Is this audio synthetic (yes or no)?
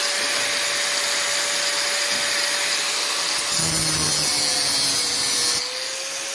no